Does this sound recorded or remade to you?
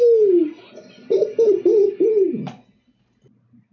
recorded